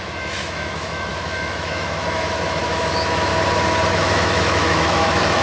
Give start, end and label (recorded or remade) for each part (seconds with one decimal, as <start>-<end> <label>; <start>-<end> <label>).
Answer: 0.0-3.3 remade; 3.3-3.9 recorded; 3.9-5.4 remade